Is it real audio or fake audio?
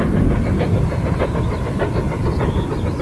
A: real